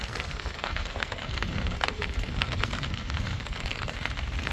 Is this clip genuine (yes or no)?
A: no